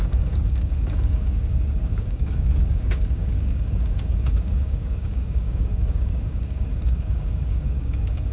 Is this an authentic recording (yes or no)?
no